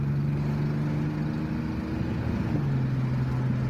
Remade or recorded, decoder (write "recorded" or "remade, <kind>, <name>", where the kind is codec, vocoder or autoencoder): recorded